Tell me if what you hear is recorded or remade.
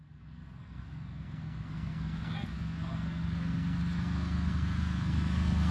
remade